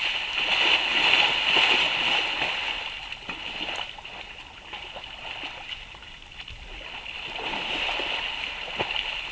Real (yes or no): yes